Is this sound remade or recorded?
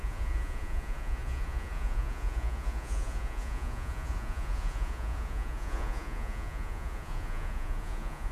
remade